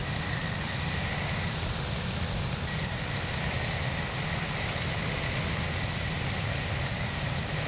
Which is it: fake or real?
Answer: real